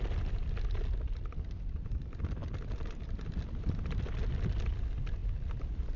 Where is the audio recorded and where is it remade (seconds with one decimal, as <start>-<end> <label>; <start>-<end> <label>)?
0.0-6.0 recorded